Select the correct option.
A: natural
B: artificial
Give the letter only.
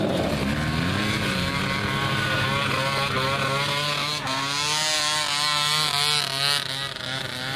A